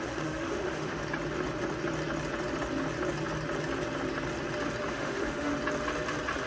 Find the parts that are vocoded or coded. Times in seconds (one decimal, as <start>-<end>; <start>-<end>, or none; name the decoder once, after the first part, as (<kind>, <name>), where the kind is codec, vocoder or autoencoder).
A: 0.0-1.0 (autoencoder, DAC-VAE); 4.9-5.5